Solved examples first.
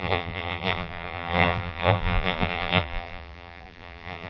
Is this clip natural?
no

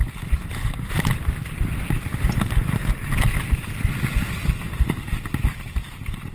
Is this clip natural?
yes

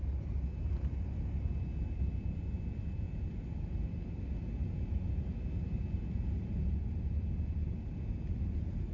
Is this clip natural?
yes